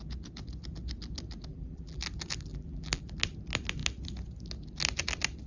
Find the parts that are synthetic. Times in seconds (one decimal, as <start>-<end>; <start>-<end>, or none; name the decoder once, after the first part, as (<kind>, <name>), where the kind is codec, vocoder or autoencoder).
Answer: 1.5-2.0 (vocoder, BigVGAN v2); 2.5-3.0